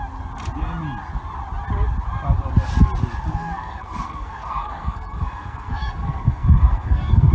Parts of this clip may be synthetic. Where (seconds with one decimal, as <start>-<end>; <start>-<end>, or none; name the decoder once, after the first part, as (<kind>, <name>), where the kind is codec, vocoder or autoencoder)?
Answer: 3.3-7.3 (codec, SNAC)

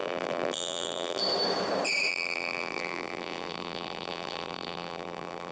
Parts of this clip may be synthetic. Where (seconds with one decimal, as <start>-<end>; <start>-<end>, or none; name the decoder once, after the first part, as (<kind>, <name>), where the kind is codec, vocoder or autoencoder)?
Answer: 0.0-1.2 (vocoder, BigVGAN v2); 2.1-5.5

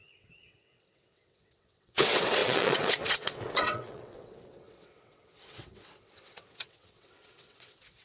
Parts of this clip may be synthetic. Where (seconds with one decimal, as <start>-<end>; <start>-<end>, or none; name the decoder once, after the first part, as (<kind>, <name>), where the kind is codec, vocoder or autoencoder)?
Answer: 0.0-8.0 (vocoder, WaveNeXt)

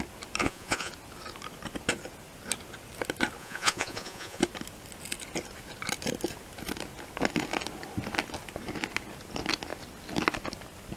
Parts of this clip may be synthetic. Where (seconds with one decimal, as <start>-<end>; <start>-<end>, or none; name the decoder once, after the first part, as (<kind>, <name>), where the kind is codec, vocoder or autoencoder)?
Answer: 0.4-0.9 (vocoder, Vocos); 3.4-4.4

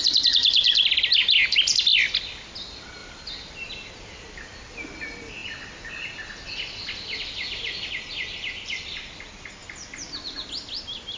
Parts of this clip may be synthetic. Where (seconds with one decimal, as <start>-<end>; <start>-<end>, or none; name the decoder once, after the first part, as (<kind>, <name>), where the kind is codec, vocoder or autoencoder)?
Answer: 3.0-3.5 (vocoder, BigVGAN v2)

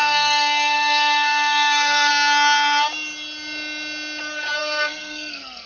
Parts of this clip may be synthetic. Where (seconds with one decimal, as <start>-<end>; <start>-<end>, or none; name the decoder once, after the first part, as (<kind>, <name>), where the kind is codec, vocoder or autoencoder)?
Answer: 0.0-2.1 (codec, SNAC); 4.6-5.7

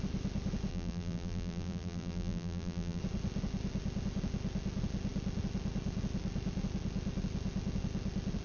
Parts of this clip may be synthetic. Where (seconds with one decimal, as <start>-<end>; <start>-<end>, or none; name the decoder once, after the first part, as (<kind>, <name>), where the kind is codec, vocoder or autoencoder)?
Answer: 0.7-3.0 (vocoder, BigVGAN v2)